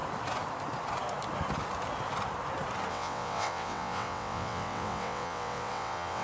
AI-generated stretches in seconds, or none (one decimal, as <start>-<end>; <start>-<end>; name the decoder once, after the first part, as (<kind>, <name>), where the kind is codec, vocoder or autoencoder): 2.9-6.2 (vocoder, WaveNeXt)